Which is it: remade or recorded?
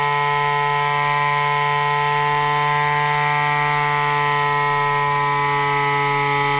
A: recorded